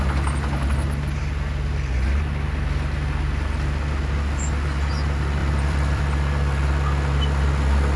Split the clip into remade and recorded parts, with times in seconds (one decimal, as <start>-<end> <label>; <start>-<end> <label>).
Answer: 0.0-5.4 recorded; 5.4-6.0 remade; 6.0-8.0 recorded